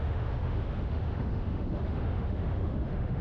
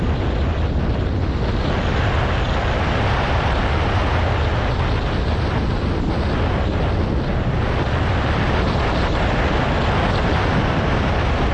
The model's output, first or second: first